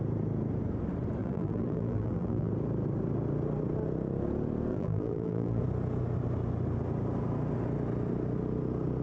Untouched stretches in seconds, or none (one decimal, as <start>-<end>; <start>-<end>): 0.0-1.2; 2.5-4.7; 5.6-9.0